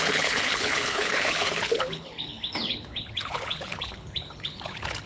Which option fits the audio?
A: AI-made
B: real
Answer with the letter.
A